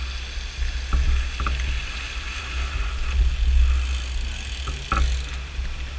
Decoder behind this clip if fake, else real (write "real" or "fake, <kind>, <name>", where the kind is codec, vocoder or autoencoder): real